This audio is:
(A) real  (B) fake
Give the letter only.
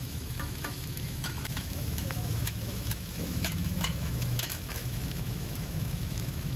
B